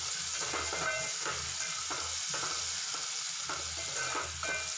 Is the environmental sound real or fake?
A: real